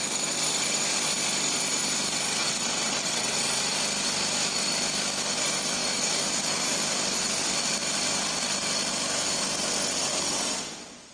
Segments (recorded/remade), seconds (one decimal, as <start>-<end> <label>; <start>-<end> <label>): 0.0-2.4 recorded; 2.4-3.6 remade; 3.6-11.1 recorded